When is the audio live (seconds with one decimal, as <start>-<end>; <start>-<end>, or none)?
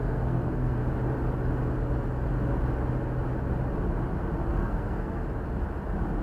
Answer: 0.8-4.5; 5.2-6.2